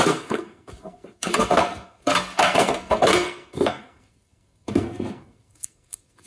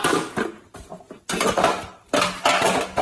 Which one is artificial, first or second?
first